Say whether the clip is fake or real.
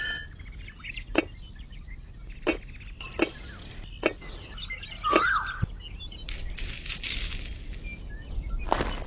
real